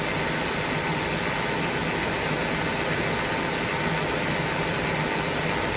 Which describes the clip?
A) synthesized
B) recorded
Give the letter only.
B